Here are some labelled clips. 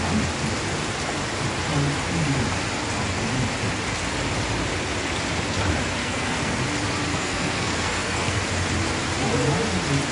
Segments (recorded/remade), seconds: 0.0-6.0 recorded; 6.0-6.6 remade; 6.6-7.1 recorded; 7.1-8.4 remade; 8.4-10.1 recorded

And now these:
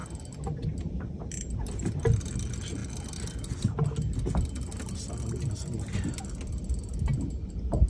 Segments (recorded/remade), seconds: 0.0-7.9 recorded